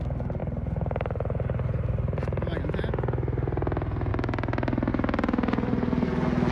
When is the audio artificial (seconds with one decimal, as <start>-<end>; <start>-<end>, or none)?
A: 0.4-2.6